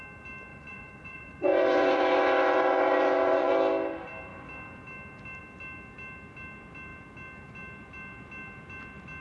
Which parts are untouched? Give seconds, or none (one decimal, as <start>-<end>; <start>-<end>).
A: 0.0-0.5; 3.5-9.2